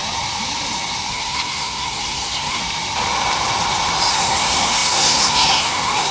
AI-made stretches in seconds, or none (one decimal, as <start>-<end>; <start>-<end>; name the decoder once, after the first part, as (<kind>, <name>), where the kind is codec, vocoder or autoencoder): 1.1-2.6 (codec, SNAC); 4.1-6.1